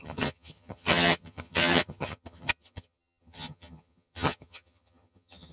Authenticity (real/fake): fake